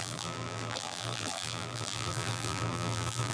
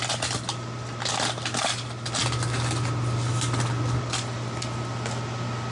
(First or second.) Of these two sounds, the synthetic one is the first